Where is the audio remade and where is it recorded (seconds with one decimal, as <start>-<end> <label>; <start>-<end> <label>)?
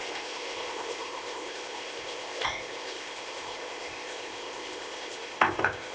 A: 0.0-5.9 remade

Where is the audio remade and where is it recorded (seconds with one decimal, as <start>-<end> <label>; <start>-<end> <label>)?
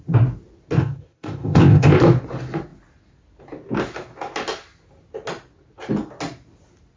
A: 0.0-0.8 recorded; 0.8-2.0 remade; 2.0-7.0 recorded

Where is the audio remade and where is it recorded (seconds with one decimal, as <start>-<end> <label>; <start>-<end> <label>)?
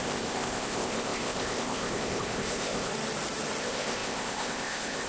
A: 0.0-2.9 remade; 2.9-3.6 recorded; 3.6-5.1 remade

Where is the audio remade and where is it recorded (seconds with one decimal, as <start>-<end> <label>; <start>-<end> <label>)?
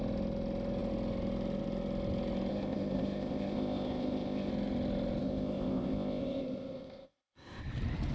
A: 0.0-2.5 recorded; 2.5-4.5 remade; 4.5-5.2 recorded; 5.2-7.6 remade; 7.6-8.1 recorded